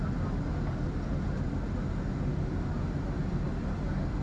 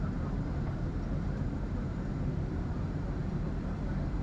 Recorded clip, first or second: first